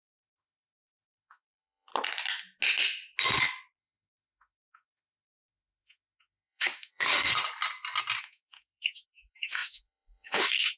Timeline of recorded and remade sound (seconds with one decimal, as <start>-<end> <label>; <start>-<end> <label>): 0.0-1.9 remade; 1.9-3.8 recorded; 3.8-7.3 remade; 7.3-8.2 recorded; 8.2-10.8 remade